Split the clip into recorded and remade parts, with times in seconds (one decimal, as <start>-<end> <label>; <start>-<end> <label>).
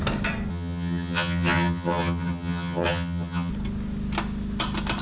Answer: 0.0-0.5 recorded; 0.5-3.5 remade; 3.5-5.0 recorded